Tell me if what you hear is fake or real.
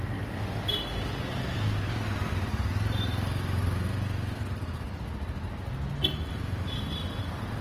real